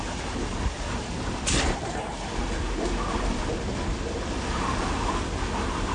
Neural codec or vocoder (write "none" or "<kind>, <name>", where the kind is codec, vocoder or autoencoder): none